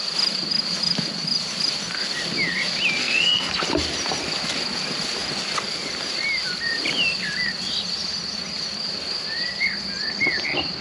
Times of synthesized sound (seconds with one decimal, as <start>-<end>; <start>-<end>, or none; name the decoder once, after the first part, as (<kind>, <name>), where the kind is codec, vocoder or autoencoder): 3.0-3.5 (codec, SNAC)

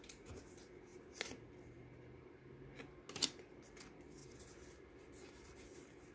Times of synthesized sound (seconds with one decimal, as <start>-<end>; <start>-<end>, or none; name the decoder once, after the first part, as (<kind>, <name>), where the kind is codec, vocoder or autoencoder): none

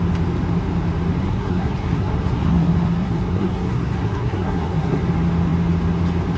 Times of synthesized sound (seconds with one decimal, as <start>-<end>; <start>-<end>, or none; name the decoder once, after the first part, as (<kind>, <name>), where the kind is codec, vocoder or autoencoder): 1.2-5.0 (codec, SNAC)

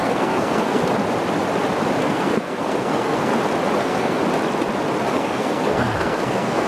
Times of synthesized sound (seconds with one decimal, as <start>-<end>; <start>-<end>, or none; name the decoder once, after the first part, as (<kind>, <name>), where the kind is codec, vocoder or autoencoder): 0.0-0.8 (codec, SNAC); 2.0-3.3; 3.8-4.2; 5.1-6.7

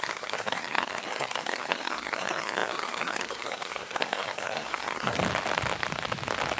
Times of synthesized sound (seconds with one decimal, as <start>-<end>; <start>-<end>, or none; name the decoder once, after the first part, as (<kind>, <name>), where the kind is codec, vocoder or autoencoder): 0.0-5.2 (codec, SNAC)